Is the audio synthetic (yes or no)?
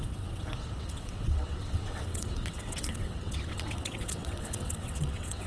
yes